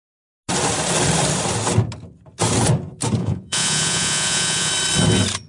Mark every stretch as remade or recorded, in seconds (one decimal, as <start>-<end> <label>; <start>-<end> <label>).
0.0-3.2 recorded; 3.2-4.7 remade; 4.7-5.5 recorded